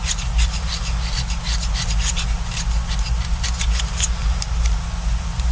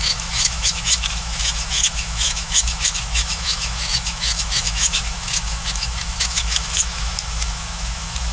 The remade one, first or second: second